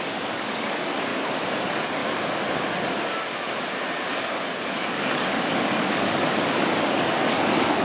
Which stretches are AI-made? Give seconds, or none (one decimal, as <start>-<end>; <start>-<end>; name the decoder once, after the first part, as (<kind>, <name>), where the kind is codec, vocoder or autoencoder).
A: 0.0-1.1 (codec, DAC); 1.6-2.0; 4.2-7.8